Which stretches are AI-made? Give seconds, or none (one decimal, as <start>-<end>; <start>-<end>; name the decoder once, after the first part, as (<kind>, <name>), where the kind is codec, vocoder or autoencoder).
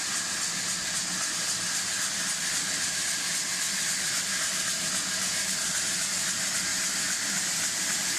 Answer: 6.7-8.2 (vocoder, BigVGAN v2)